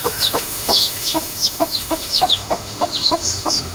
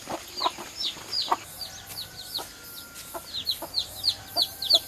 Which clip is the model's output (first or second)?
first